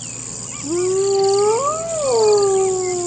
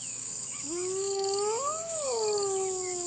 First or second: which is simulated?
second